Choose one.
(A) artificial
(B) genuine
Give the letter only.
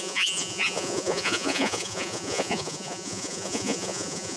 A